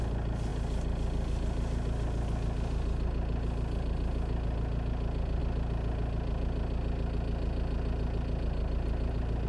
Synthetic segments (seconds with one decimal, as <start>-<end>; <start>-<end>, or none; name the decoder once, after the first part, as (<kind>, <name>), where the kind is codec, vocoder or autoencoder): none